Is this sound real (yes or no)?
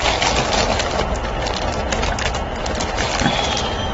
yes